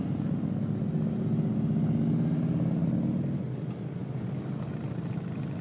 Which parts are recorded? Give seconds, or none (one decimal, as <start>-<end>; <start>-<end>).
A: 0.0-5.6